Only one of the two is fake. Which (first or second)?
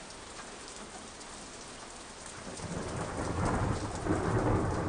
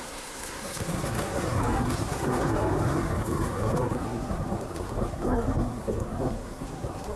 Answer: second